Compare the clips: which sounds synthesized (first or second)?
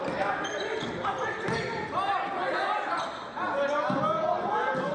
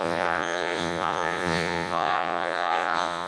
second